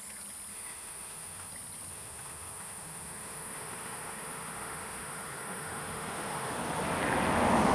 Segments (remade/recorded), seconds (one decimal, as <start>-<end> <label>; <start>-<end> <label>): 0.0-0.5 recorded; 0.5-1.5 remade; 1.5-1.9 recorded; 1.9-6.5 remade; 6.5-7.7 recorded